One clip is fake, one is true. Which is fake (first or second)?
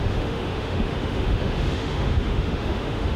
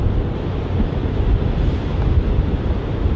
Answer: first